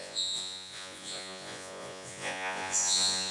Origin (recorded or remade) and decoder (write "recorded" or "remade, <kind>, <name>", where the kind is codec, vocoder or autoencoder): remade, vocoder, Vocos